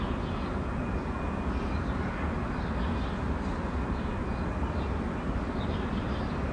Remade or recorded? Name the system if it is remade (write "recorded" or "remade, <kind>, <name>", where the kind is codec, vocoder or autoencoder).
recorded